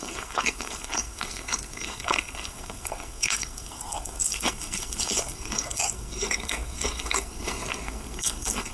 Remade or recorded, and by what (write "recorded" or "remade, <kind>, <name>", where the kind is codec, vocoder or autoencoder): remade, codec, SNAC